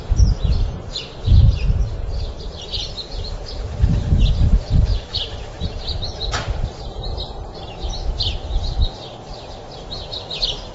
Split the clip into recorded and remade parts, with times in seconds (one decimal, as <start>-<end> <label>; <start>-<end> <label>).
0.0-1.4 recorded; 1.4-2.8 remade; 2.8-4.9 recorded; 4.9-6.3 remade; 6.3-10.7 recorded